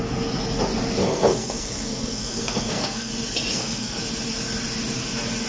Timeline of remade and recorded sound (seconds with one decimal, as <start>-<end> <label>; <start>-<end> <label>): 0.0-1.0 recorded; 1.0-3.1 remade; 3.1-3.5 recorded; 3.5-4.0 remade; 4.0-5.5 recorded